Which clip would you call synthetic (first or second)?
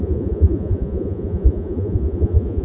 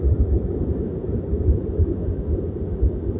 first